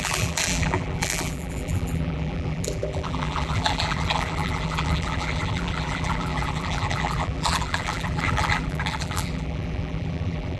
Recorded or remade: remade